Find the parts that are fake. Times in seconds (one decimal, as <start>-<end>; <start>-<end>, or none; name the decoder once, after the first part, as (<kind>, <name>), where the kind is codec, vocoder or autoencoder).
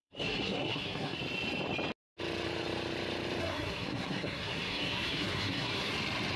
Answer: 0.0-1.2 (codec, SNAC); 3.4-5.9